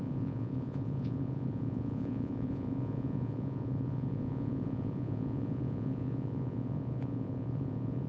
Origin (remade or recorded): remade